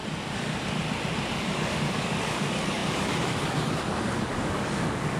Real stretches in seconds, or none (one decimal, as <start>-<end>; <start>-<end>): 0.0-1.3